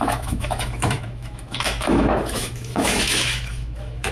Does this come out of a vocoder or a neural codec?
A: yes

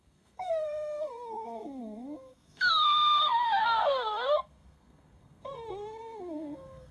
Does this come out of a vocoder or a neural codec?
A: yes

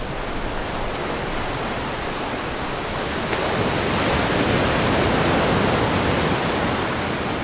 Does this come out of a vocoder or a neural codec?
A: no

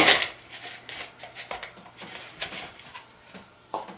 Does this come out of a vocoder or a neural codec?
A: no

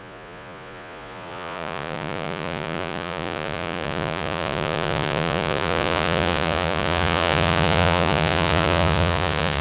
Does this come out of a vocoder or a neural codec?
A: yes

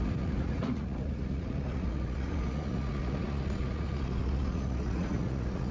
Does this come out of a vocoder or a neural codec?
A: yes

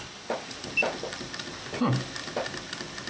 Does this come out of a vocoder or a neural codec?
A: no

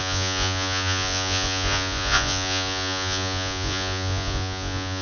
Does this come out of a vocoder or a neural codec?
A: yes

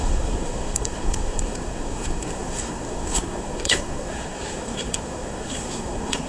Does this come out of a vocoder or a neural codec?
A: yes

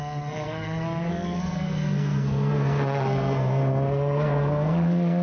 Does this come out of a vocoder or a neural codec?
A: yes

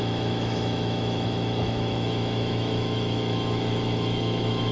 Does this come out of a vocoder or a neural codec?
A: yes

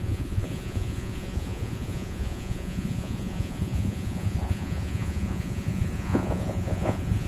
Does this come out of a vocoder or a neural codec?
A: yes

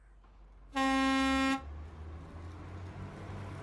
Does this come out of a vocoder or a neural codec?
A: no